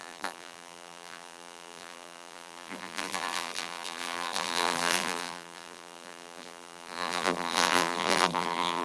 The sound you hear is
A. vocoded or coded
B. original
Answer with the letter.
A